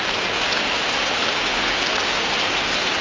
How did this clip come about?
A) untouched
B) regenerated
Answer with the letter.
A